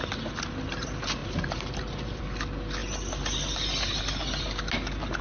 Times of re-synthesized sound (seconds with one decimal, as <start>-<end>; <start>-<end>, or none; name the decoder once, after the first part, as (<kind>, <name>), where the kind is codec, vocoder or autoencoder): 1.2-2.2 (vocoder, BigVGAN v2)